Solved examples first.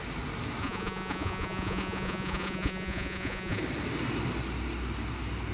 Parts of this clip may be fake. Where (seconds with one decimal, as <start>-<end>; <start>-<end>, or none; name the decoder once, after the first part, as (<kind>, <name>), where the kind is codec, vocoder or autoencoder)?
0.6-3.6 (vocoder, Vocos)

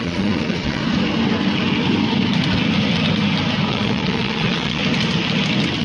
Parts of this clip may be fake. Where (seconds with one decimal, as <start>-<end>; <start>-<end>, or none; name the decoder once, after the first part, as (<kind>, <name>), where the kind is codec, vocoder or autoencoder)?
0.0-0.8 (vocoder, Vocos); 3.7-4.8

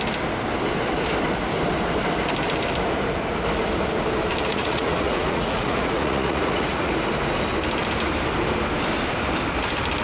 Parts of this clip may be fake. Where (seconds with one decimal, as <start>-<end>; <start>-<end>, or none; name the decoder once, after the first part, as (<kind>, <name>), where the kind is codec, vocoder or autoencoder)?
4.5-6.9 (vocoder, Vocos)